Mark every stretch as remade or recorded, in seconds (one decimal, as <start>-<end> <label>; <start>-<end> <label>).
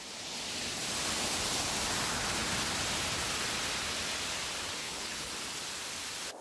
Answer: 0.0-4.8 recorded; 4.8-5.3 remade; 5.3-6.4 recorded